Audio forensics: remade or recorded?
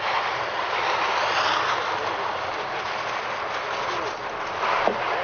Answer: recorded